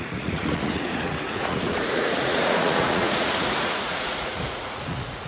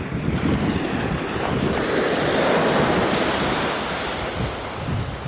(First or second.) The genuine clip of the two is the second